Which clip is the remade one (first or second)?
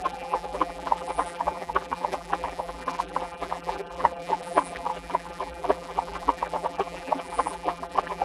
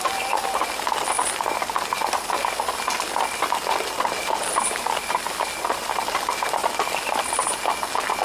first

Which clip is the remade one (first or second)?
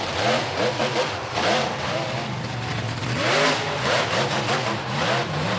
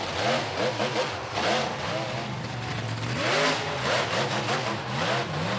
first